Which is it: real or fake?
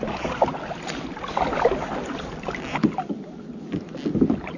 real